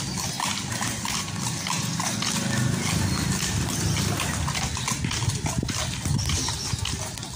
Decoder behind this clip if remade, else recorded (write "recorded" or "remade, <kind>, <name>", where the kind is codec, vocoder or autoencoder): recorded